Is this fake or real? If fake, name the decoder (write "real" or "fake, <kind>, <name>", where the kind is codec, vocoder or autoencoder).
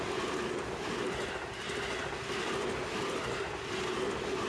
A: real